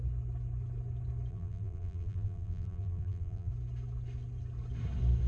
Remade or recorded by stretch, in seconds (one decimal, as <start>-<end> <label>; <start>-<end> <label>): 0.0-1.3 recorded; 1.3-3.5 remade; 3.5-5.3 recorded